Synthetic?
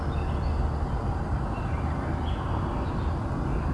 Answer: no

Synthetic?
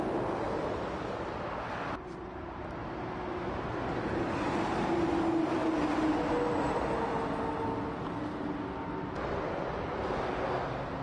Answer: no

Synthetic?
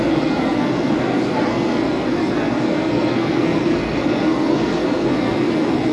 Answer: yes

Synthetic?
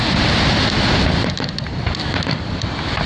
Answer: no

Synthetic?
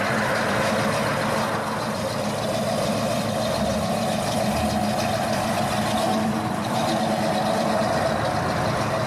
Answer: yes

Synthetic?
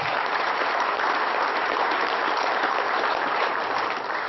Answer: yes